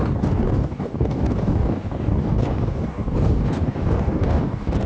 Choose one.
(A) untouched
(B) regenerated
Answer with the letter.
B